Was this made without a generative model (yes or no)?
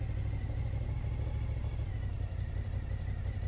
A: yes